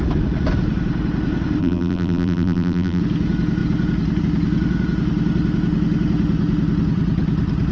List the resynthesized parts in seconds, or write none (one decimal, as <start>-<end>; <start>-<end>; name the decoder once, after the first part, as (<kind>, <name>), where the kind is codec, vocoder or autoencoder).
1.6-3.0 (vocoder, BigVGAN v2)